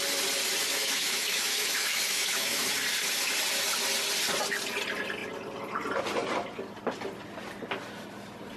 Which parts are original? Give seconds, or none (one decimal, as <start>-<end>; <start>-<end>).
0.0-0.7; 2.7-8.6